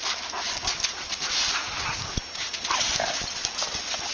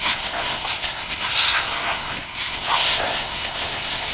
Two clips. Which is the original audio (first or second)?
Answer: first